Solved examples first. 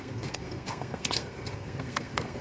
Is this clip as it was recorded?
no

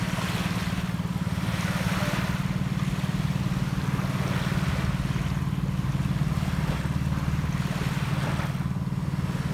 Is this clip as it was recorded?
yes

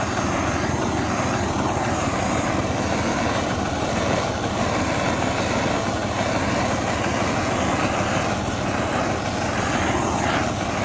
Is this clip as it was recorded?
yes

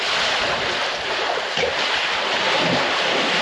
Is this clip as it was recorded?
yes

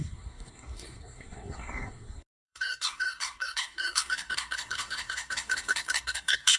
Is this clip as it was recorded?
no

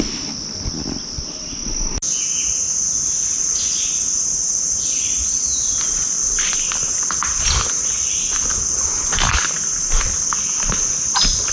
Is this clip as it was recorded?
yes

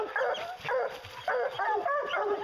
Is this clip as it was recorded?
yes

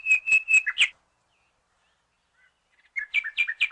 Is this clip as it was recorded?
yes